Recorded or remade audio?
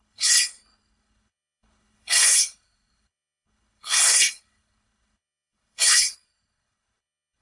remade